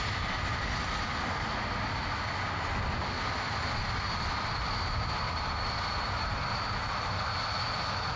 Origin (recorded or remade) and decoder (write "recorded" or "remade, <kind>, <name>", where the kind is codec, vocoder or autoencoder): recorded